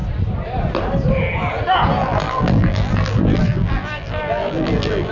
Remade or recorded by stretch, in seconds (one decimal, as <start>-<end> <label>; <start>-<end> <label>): 0.0-2.0 recorded; 2.0-5.1 remade